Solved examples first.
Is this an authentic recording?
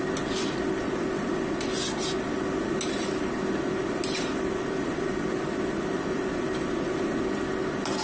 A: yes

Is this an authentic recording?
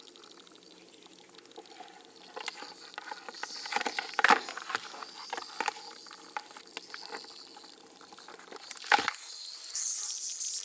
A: yes